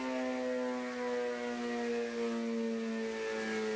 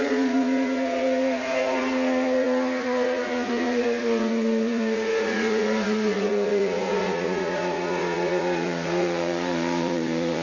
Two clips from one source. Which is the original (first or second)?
first